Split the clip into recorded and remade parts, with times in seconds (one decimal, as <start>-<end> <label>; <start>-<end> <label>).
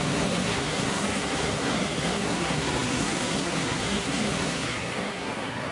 0.0-5.7 remade